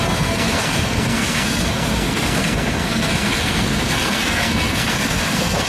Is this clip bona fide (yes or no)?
no